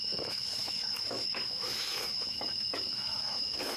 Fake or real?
fake